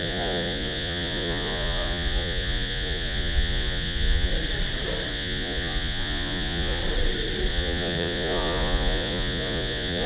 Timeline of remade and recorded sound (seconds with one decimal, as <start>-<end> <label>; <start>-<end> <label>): 0.0-4.3 remade; 4.3-5.1 recorded; 5.1-6.8 remade; 6.8-7.5 recorded; 7.5-10.1 remade